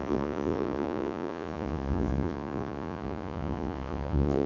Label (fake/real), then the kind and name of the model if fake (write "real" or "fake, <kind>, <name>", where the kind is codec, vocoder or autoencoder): fake, vocoder, Vocos